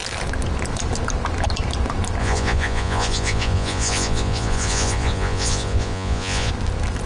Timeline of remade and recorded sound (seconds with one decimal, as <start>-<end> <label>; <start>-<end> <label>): 0.0-2.2 recorded; 2.2-6.5 remade; 6.5-7.1 recorded